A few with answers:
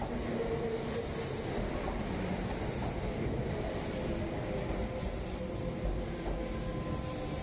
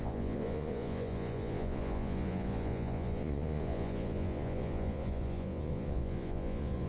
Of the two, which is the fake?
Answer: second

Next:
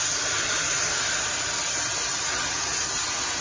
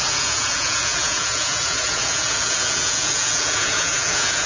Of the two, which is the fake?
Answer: second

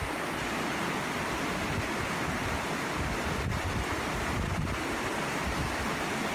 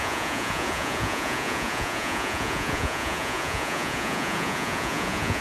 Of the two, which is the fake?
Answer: second